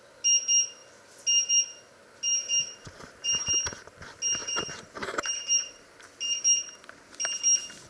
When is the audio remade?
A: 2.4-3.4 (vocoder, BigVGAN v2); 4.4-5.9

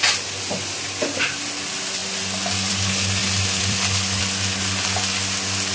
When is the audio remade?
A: 3.2-4.2 (vocoder, BigVGAN v2)